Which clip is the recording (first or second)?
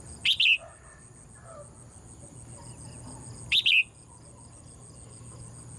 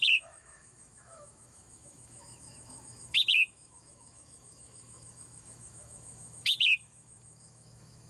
first